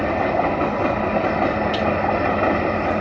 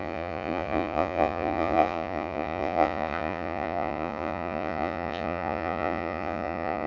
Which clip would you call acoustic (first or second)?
first